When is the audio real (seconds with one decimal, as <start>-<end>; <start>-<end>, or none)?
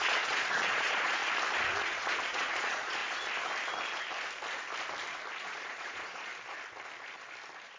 1.2-1.8; 3.0-5.4; 6.3-7.8